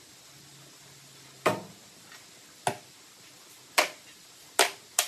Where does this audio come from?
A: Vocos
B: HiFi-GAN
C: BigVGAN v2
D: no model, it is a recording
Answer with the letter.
D